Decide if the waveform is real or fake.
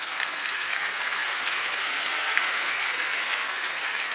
fake